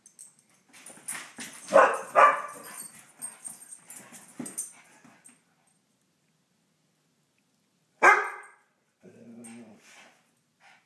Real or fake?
real